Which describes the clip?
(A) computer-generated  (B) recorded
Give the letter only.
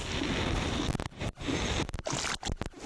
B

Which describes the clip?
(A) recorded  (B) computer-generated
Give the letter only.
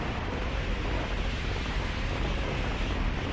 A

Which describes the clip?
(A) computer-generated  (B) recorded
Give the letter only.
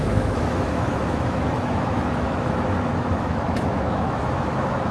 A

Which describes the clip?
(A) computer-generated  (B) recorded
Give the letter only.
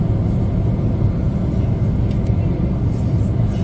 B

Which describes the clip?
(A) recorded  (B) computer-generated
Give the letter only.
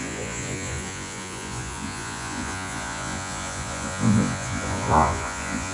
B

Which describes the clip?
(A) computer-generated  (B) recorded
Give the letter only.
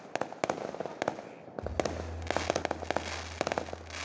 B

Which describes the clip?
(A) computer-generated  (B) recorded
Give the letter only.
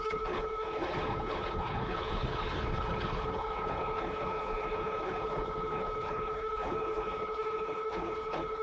A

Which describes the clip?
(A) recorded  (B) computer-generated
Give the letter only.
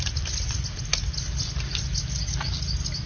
A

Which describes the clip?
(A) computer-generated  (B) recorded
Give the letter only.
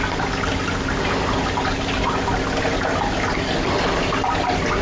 B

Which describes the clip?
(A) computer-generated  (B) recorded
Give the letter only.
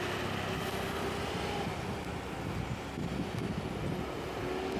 B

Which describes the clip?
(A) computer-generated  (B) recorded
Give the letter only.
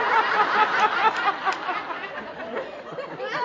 B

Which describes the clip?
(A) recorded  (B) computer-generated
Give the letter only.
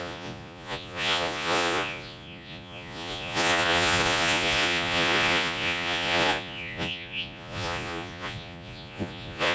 B